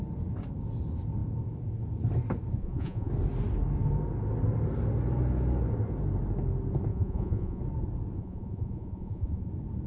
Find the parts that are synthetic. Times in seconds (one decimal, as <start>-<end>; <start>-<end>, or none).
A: 2.6-3.1; 6.9-7.6; 8.2-9.5